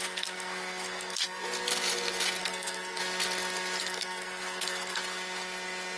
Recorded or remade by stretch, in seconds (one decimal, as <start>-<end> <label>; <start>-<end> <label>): 0.0-1.4 remade; 1.4-2.4 recorded; 2.4-3.0 remade; 3.0-3.8 recorded; 3.8-5.0 remade; 5.0-6.0 recorded